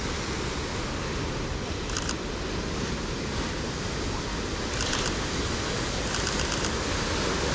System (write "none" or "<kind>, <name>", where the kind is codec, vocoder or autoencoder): none